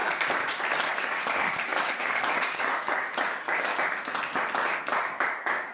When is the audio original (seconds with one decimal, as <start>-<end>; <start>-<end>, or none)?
0.0-0.9; 3.7-4.8